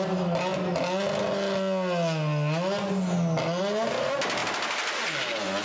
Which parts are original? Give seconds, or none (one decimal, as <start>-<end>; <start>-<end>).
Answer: 0.0-5.6